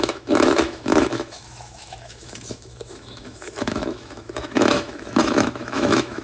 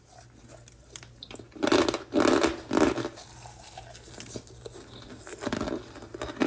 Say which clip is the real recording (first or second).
second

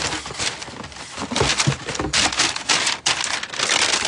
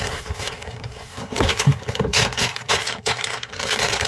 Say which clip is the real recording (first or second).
first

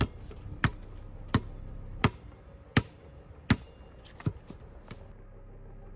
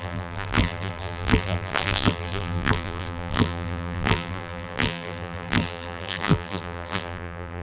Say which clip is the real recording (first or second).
first